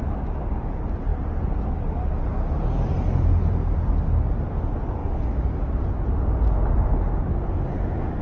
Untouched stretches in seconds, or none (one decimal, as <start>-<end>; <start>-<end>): 0.0-8.2